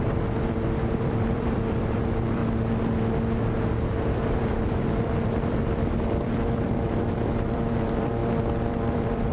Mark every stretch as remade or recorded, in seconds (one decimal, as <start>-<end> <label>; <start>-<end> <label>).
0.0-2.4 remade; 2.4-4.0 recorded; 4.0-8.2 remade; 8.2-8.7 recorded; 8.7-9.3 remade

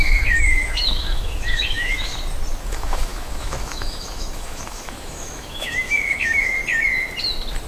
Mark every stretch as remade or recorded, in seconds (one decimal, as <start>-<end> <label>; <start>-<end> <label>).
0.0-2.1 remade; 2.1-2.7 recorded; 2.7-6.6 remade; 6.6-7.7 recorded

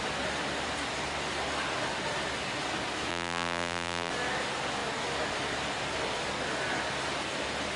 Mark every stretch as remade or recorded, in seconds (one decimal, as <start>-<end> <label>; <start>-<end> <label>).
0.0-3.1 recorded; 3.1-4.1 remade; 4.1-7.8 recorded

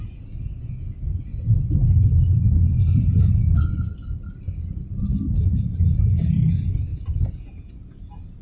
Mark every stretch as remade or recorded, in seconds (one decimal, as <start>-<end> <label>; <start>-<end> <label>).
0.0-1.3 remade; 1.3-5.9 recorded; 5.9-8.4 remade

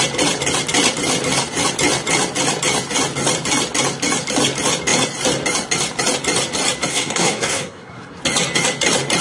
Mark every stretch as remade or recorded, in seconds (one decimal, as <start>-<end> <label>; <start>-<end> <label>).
0.0-6.9 recorded; 6.9-8.2 remade; 8.2-9.2 recorded

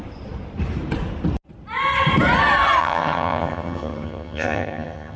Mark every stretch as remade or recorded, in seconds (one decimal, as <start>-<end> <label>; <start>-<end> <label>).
0.0-2.8 recorded; 2.8-5.2 remade

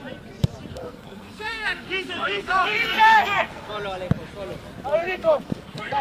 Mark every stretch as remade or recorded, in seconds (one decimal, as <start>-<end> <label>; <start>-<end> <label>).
0.0-0.7 recorded; 0.7-3.7 remade; 3.7-5.0 recorded; 5.0-6.0 remade

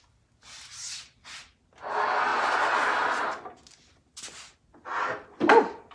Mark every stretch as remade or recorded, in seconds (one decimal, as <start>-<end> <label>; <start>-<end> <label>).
0.0-5.9 recorded